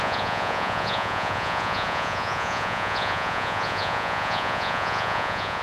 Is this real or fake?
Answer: fake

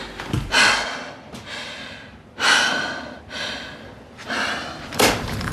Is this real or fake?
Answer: real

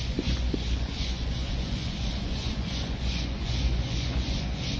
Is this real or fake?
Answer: fake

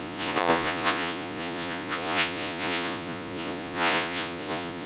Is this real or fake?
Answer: fake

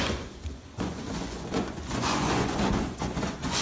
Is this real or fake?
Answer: fake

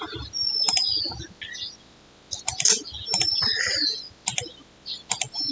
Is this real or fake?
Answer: real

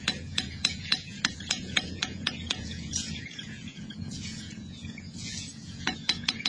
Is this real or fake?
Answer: fake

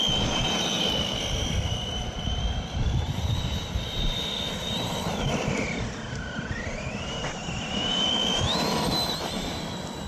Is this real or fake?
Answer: real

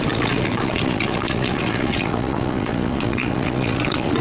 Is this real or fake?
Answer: fake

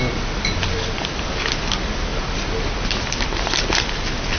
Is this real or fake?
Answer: real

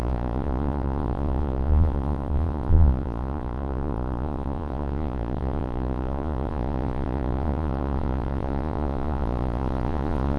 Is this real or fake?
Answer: fake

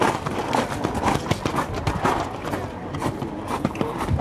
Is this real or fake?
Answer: real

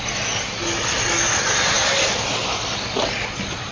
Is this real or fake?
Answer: real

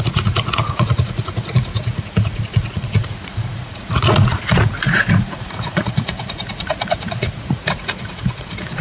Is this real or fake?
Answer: fake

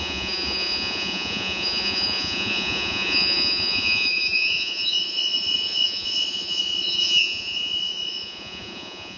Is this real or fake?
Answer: fake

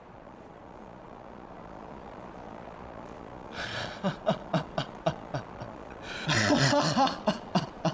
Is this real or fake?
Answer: fake